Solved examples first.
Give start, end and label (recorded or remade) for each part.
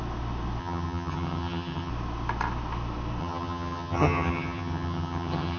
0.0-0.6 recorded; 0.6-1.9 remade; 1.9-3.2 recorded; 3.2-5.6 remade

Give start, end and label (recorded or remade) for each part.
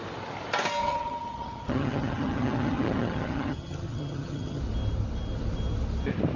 0.0-0.8 recorded; 0.8-4.6 remade; 4.6-6.4 recorded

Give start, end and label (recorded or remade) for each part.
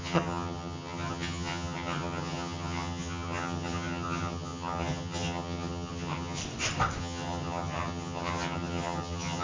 0.0-6.4 remade; 6.4-7.0 recorded; 7.0-9.4 remade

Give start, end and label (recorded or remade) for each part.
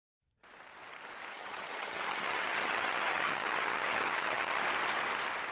0.0-1.3 recorded; 1.3-4.6 remade; 4.6-5.5 recorded